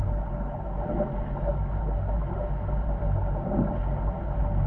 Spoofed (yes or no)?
no